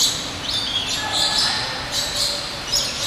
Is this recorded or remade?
recorded